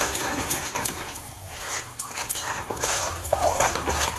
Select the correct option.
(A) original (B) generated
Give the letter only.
B